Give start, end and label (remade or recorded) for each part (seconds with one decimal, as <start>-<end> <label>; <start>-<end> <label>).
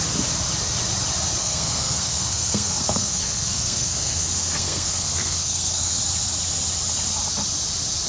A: 0.0-1.4 recorded; 1.4-6.0 remade; 6.0-8.1 recorded